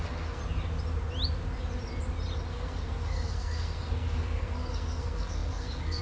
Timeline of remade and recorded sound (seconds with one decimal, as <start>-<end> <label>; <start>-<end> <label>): 0.0-0.4 remade; 0.4-2.5 recorded; 2.5-6.0 remade